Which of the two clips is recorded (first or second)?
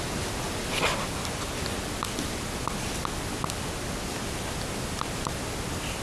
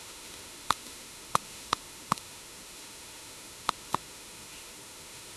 first